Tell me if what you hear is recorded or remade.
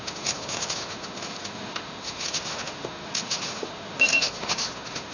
remade